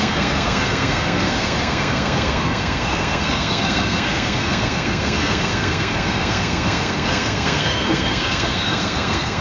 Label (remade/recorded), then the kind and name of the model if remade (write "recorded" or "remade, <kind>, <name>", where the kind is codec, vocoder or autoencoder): remade, codec, SNAC